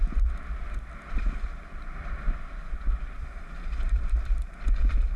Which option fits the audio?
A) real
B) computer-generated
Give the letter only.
B